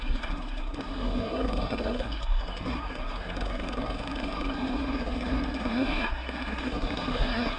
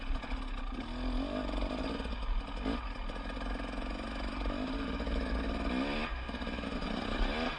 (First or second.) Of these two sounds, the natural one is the second